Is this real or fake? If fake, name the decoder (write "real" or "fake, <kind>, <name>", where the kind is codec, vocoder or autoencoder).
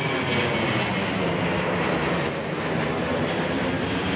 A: real